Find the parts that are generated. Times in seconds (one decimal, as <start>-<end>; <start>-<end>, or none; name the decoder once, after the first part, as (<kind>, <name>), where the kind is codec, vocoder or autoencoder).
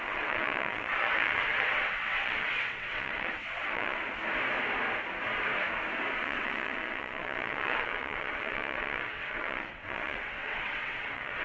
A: 0.0-4.0 (vocoder, WaveNeXt); 6.2-11.4